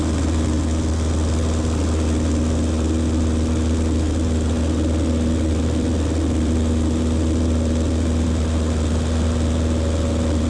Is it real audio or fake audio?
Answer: real